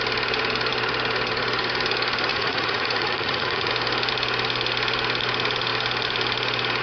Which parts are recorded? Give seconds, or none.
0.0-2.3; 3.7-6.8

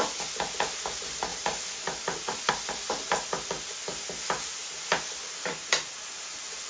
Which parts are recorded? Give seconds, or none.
0.0-6.7